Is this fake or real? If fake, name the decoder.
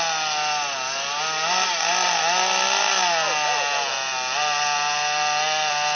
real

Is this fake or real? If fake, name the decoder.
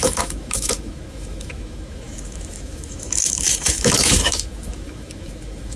fake, autoencoder, DAC-VAE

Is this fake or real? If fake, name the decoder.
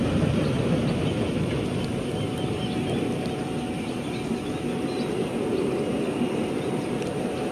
real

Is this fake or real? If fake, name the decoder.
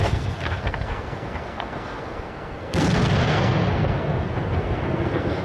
fake, codec, SNAC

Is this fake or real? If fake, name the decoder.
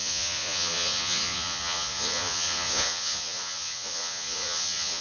fake, vocoder, Vocos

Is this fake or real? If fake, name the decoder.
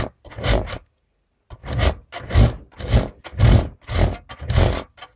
real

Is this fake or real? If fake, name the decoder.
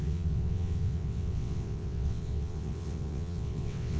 fake, vocoder, WaveNeXt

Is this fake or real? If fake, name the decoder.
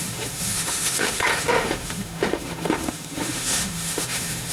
fake, autoencoder, DAC-VAE